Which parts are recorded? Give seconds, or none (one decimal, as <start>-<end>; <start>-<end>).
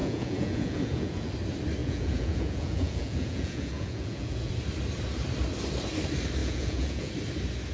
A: 1.3-1.8; 4.5-6.4; 7.1-7.7